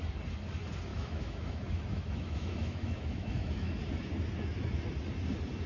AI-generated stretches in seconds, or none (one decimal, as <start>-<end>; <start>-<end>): 0.9-3.7